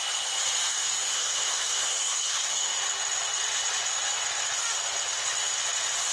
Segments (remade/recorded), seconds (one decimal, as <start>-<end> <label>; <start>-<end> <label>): 0.0-0.7 recorded; 0.7-2.8 remade; 2.8-6.1 recorded